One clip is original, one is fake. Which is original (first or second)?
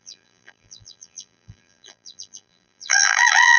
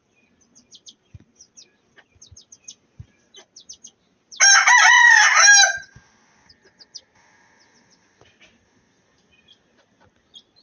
second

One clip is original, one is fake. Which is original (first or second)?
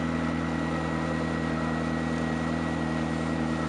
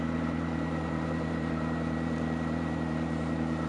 first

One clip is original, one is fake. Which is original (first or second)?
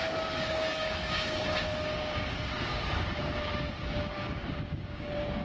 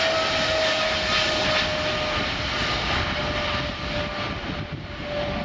second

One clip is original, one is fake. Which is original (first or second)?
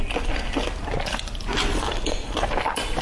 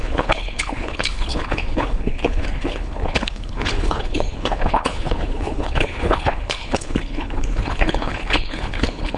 first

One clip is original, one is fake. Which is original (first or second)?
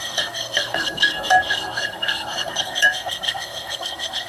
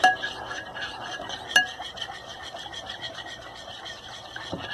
second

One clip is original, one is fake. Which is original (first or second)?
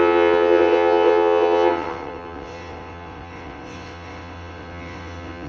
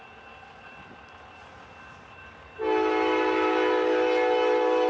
second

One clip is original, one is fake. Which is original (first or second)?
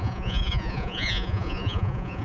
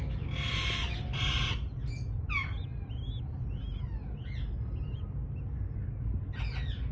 second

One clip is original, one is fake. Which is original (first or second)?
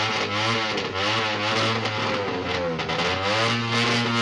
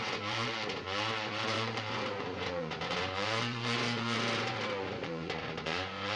first